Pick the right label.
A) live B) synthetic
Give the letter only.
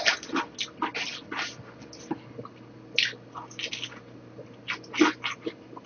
A